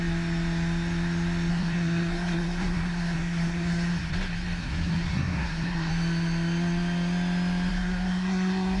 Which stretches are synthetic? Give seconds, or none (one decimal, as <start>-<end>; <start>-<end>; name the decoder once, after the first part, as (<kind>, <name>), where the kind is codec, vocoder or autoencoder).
1.5-4.1 (codec, SNAC); 4.6-5.9; 7.7-8.8